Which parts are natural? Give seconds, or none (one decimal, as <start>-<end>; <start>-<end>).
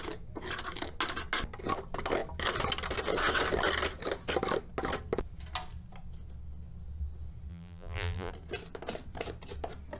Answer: 0.0-7.5; 8.3-10.0